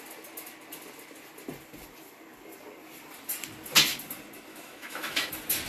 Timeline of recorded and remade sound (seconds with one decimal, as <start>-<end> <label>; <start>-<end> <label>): 0.0-4.5 recorded; 4.5-5.3 remade; 5.3-5.7 recorded